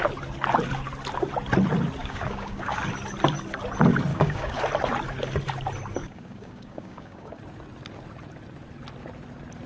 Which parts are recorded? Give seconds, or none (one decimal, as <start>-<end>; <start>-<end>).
0.0-2.0; 2.8-4.1; 4.6-6.0; 7.4-9.7